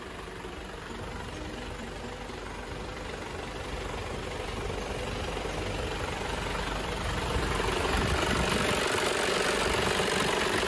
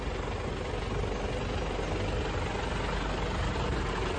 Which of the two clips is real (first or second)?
second